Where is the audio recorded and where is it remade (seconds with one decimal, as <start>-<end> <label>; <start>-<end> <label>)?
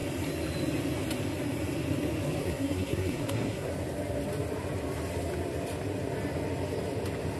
0.0-2.4 recorded; 2.4-3.7 remade; 3.7-7.4 recorded